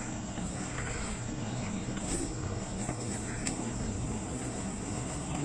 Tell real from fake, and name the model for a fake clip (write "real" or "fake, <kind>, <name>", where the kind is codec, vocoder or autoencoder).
fake, codec, SNAC